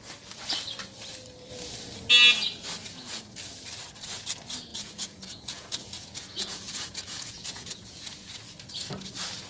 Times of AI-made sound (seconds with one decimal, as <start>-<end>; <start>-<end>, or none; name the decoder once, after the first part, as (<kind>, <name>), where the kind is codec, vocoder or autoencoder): 2.8-3.4 (vocoder, Vocos); 4.7-8.0